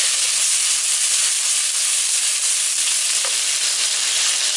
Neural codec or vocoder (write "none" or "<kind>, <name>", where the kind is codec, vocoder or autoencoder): none